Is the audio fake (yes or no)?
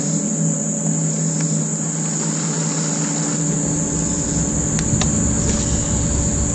no